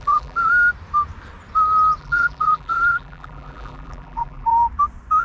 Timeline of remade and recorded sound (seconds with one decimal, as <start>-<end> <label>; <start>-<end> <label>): 0.0-0.5 remade; 0.5-2.0 recorded; 2.0-4.5 remade; 4.5-5.2 recorded